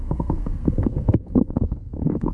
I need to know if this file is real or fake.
fake